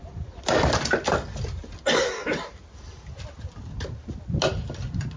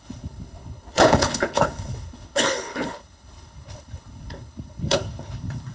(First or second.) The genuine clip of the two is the first